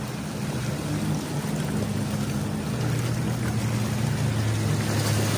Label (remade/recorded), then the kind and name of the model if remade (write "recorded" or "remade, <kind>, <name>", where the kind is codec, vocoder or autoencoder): recorded